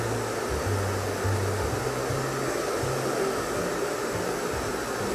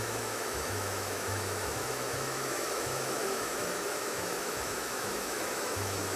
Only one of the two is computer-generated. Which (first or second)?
second